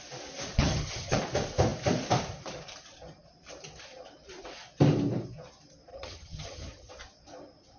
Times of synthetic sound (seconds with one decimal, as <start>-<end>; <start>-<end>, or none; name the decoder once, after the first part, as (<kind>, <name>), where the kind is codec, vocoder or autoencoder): 0.6-1.2 (vocoder, HiFi-GAN); 5.9-6.9